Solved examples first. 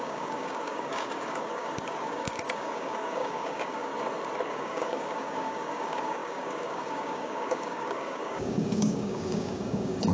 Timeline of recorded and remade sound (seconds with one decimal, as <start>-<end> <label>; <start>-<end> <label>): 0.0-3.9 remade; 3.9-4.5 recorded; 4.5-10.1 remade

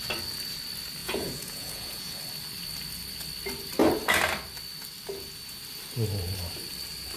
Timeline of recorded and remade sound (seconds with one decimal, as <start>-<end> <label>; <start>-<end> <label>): 0.0-1.0 recorded; 1.0-2.2 remade; 2.2-7.2 recorded

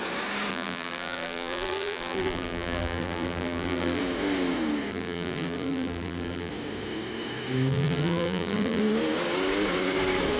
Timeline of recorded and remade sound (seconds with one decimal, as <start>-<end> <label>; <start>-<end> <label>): 0.0-0.5 recorded; 0.5-4.0 remade; 4.0-4.9 recorded; 4.9-6.5 remade; 6.5-7.7 recorded; 7.7-8.8 remade; 8.8-10.4 recorded

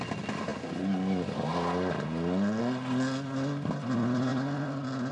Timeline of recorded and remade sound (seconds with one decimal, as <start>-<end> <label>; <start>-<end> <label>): 0.0-5.1 recorded